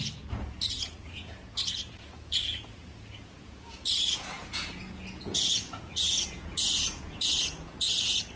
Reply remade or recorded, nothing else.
remade